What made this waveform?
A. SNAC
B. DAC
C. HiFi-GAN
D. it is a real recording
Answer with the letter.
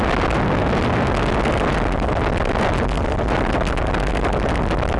D